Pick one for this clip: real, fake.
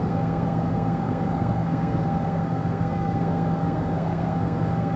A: fake